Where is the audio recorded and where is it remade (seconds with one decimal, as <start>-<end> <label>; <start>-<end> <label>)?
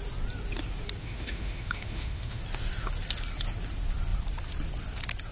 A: 0.0-1.0 recorded; 1.0-2.4 remade; 2.4-5.3 recorded